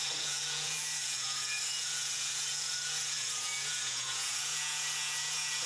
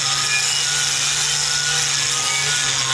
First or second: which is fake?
first